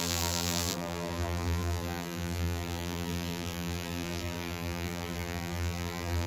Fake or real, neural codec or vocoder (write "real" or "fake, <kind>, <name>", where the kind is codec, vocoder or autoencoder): fake, vocoder, BigVGAN v2